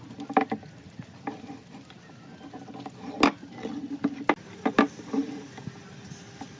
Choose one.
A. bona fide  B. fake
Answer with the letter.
A